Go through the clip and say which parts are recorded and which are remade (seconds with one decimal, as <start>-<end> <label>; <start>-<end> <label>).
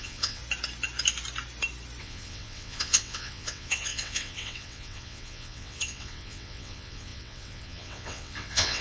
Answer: 0.0-0.4 remade; 0.4-2.0 recorded; 2.0-8.8 remade